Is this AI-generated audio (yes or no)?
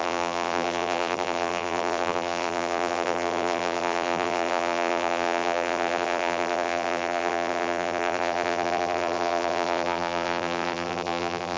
yes